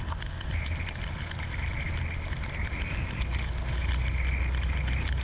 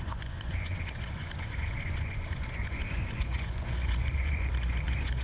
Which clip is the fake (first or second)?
second